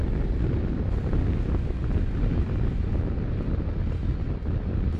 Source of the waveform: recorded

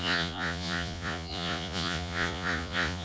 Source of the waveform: remade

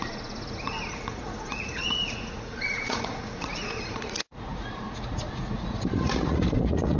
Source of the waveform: remade